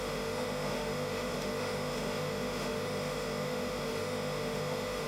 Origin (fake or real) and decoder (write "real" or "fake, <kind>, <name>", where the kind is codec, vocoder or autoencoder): fake, autoencoder, DAC-VAE